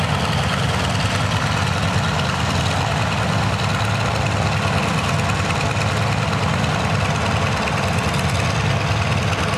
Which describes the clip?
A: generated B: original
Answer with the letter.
B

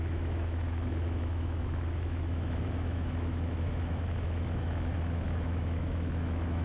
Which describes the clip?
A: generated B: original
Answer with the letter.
A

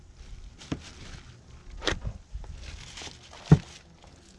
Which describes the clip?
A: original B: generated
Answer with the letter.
A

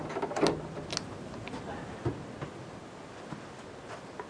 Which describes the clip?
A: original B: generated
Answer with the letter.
A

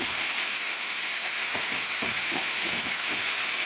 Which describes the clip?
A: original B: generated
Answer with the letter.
B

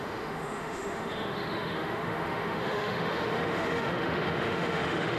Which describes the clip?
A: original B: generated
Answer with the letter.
B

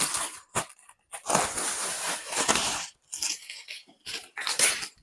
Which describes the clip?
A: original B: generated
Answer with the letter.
A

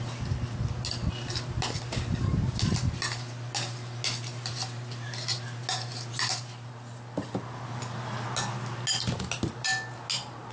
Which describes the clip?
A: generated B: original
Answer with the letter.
B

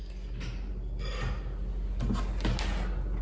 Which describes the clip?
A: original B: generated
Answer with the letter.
A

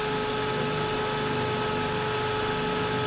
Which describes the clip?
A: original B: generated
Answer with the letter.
A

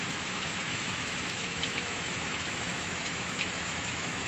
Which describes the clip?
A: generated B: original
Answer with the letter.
A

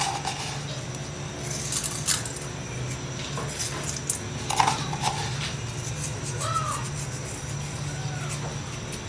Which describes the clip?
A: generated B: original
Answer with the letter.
B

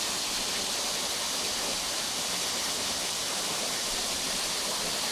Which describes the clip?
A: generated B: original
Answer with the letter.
B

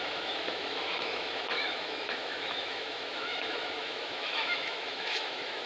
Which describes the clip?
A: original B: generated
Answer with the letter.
B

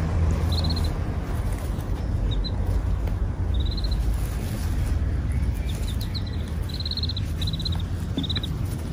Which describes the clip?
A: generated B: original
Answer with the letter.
B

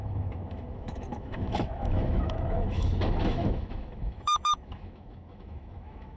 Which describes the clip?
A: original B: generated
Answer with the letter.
B